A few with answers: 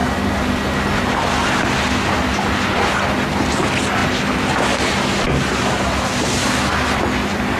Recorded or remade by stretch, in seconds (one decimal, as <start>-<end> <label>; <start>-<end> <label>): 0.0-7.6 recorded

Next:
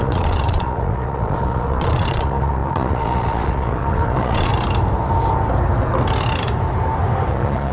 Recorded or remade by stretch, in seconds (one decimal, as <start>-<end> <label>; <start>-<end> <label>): 0.0-4.5 remade; 4.5-7.3 recorded; 7.3-7.7 remade

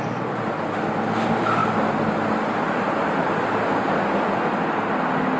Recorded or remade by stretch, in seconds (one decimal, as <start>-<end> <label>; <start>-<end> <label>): 0.0-5.4 recorded